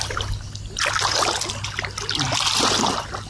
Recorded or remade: recorded